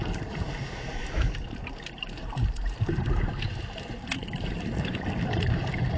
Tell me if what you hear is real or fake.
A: fake